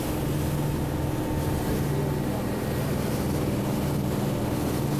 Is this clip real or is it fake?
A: real